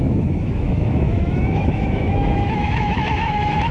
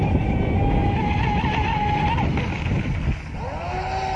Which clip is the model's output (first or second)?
first